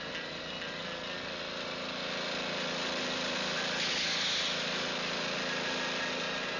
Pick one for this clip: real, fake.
real